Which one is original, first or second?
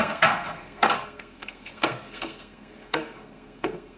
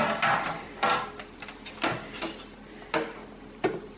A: second